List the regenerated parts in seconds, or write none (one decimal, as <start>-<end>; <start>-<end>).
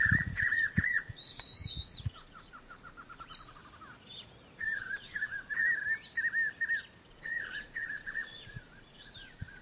0.0-3.6; 4.6-5.6; 7.1-9.6